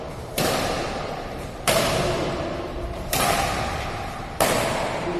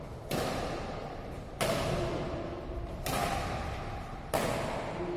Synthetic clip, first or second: first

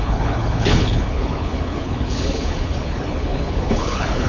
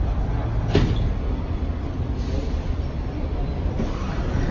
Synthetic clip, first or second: first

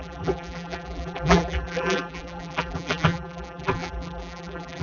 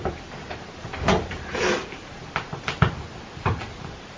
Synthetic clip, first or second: first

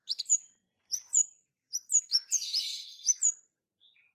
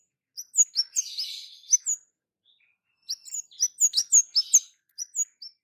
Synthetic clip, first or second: first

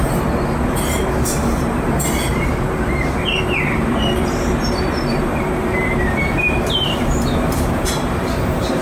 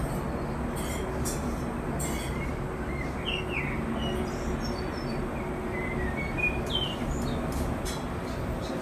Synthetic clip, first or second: first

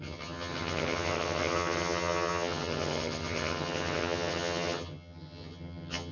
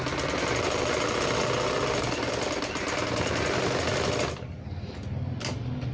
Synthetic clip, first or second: first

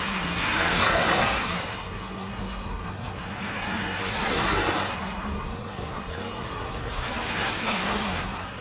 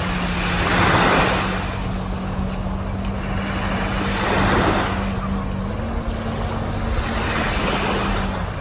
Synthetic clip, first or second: first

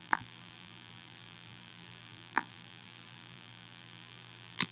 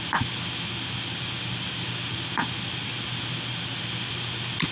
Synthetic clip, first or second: first